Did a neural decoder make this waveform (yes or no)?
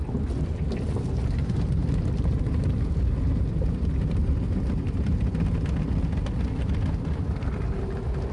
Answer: no